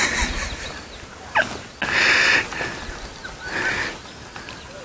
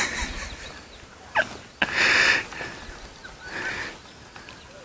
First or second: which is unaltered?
first